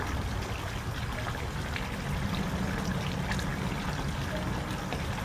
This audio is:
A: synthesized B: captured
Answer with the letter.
B